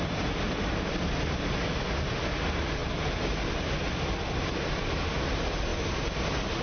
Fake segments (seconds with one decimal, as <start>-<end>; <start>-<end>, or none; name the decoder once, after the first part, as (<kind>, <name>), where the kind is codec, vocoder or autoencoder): none